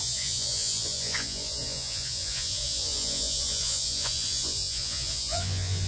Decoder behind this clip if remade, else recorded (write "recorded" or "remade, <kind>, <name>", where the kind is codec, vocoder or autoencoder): remade, vocoder, Vocos